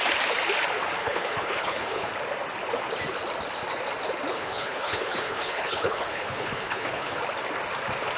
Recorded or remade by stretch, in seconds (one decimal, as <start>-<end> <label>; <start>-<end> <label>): 0.0-1.0 recorded; 1.0-2.1 remade; 2.1-4.3 recorded; 4.3-7.2 remade; 7.2-8.2 recorded